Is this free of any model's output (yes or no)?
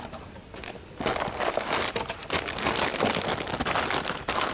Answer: yes